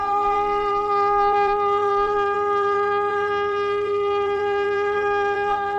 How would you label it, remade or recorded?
remade